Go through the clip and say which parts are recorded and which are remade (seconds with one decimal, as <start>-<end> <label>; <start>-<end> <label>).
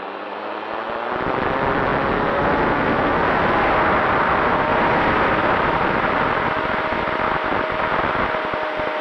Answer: 0.0-4.7 recorded; 4.7-6.2 remade; 6.2-9.0 recorded